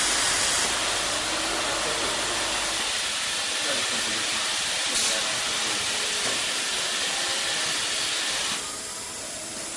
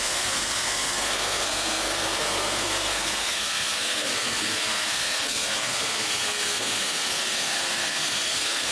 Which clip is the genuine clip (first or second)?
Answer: first